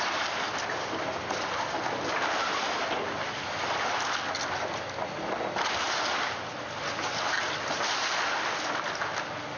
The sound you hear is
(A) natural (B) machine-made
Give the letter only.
A